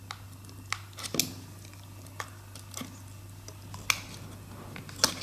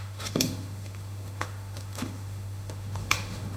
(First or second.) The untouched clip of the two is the first